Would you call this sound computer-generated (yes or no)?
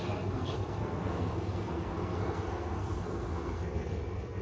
yes